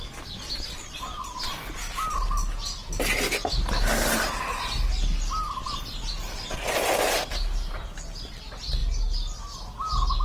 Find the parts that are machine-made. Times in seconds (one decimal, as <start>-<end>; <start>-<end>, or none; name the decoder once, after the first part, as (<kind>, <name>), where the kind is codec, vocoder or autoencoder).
none